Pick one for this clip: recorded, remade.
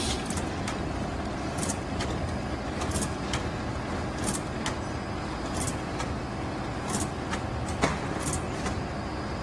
recorded